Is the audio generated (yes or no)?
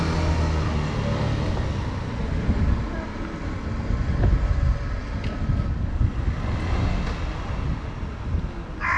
no